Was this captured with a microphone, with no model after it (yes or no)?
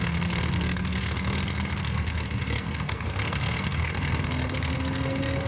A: no